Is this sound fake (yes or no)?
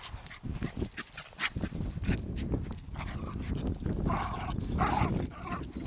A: no